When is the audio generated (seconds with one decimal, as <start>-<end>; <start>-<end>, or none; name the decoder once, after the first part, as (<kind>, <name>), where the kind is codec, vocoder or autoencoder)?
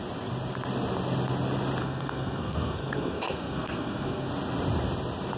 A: 1.8-4.3 (codec, SNAC)